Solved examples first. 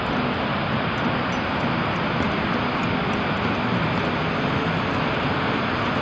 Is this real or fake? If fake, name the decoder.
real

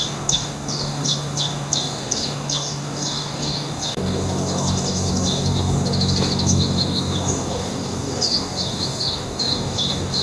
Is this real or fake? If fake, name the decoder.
fake, codec, DAC